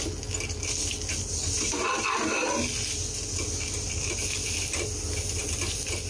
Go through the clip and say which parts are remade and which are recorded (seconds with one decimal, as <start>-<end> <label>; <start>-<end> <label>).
0.0-6.1 recorded